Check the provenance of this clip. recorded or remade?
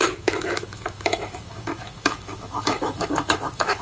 remade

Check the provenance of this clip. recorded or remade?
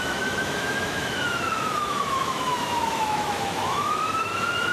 remade